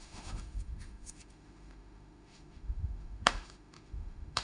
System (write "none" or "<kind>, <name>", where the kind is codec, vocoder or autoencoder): autoencoder, DAC-VAE